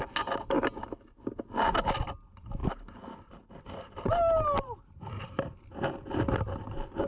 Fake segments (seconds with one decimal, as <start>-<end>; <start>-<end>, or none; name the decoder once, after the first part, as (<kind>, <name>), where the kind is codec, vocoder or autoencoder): none